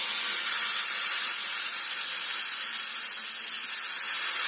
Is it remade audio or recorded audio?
recorded